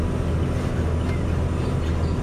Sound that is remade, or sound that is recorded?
recorded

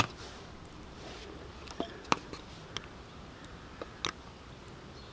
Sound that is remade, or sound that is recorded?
recorded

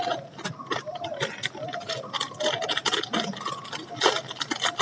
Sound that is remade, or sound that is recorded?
recorded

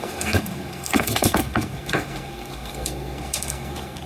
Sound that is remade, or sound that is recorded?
remade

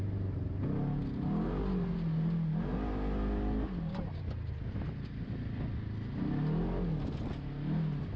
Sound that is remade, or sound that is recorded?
recorded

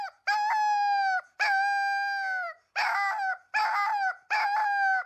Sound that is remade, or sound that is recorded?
recorded